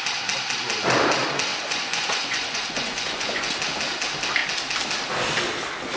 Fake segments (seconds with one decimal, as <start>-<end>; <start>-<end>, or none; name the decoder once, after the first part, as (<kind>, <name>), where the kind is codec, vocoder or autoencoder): 1.5-3.5 (vocoder, Vocos)